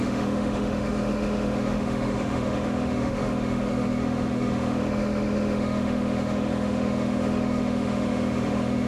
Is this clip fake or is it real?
fake